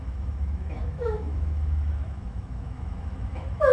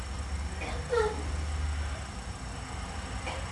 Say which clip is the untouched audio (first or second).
second